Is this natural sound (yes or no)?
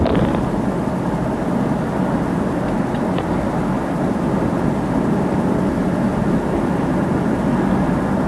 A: yes